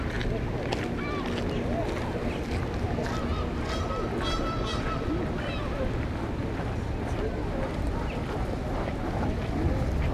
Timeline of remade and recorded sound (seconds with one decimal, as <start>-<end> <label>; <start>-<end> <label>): 0.0-4.7 recorded; 4.7-5.8 remade; 5.8-10.1 recorded